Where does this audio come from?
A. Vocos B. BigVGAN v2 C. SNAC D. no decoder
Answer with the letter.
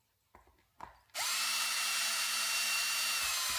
D